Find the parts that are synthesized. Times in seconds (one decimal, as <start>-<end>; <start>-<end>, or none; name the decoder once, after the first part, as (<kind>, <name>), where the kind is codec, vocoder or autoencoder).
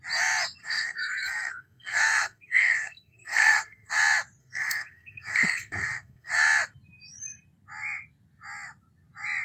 0.6-3.9 (codec, SNAC); 4.4-6.3